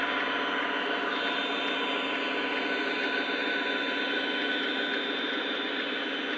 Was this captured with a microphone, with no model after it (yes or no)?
yes